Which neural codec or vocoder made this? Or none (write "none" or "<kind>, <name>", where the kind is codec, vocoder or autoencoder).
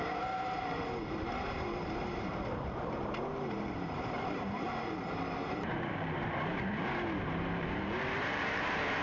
vocoder, BigVGAN v2